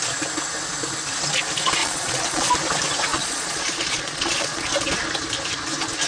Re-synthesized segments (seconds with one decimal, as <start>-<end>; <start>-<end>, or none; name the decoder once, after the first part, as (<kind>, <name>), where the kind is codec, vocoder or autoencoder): 1.8-2.5 (vocoder, Vocos); 3.1-4.6